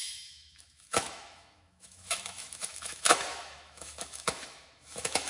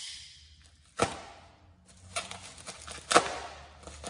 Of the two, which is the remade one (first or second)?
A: first